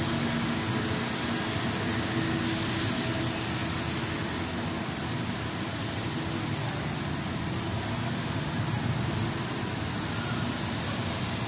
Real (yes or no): yes